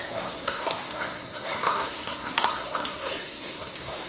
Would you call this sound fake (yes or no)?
yes